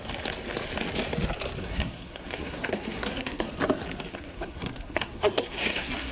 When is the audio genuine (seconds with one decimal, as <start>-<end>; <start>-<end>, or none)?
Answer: 0.0-1.6; 3.5-4.1